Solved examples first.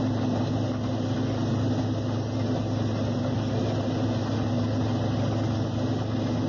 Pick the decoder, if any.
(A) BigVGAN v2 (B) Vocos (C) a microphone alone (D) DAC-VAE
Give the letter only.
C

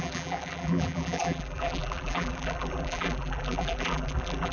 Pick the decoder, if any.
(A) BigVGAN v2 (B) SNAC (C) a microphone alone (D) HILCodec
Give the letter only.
A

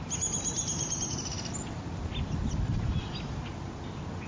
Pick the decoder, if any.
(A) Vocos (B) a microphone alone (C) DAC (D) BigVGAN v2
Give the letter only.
B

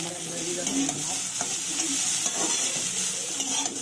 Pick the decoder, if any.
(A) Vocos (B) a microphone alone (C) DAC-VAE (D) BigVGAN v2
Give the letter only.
B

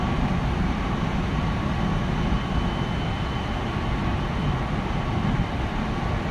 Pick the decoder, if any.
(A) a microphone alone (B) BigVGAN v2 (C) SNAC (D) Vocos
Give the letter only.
B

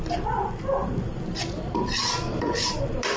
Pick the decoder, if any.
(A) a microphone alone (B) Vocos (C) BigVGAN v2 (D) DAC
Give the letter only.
C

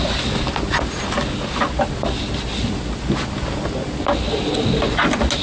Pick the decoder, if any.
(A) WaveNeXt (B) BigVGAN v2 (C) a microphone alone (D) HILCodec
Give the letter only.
C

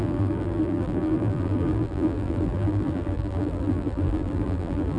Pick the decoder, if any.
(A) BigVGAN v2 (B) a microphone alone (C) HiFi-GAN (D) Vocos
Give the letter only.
A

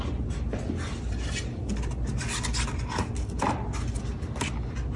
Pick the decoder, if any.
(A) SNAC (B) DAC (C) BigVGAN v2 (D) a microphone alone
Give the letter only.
D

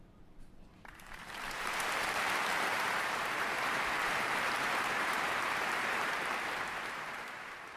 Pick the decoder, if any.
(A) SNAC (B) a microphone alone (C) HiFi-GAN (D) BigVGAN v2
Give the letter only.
D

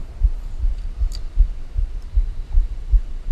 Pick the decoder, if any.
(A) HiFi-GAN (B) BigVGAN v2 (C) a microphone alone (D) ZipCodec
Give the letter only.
B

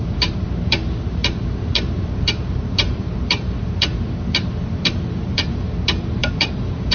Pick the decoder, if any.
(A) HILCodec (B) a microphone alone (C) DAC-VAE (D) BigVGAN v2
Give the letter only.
D